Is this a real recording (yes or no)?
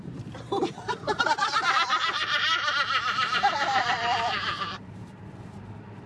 no